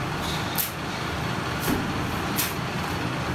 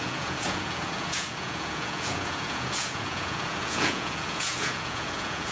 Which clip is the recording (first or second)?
first